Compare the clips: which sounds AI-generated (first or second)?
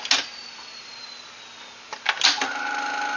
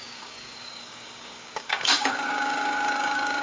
second